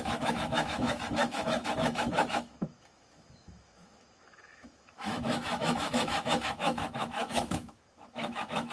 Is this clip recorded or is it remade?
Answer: remade